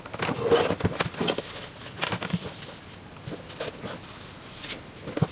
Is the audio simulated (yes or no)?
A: no